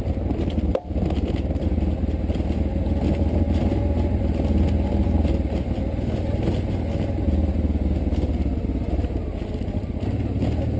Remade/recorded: recorded